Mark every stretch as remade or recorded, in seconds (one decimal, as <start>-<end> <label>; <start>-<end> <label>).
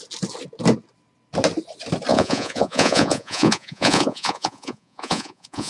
0.0-2.1 recorded; 2.1-5.7 remade